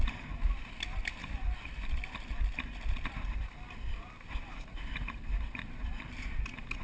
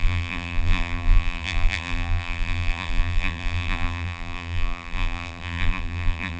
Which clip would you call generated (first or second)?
second